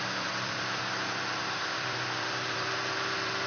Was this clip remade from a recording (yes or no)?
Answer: yes